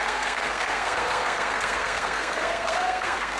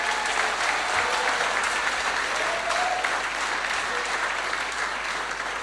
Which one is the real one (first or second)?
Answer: second